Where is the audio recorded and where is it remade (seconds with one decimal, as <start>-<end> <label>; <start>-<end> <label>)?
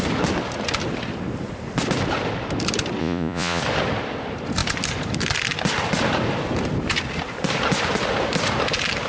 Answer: 0.0-3.0 recorded; 3.0-3.6 remade; 3.6-9.1 recorded